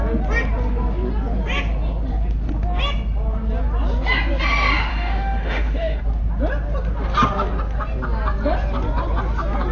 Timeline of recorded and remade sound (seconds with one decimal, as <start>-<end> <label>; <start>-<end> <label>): 0.0-4.9 recorded; 4.9-6.0 remade; 6.0-9.7 recorded